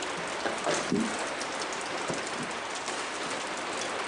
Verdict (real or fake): real